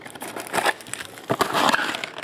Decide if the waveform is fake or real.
fake